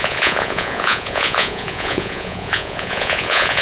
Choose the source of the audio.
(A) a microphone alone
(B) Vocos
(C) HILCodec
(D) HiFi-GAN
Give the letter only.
B